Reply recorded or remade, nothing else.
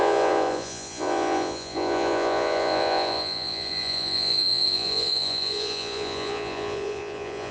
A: remade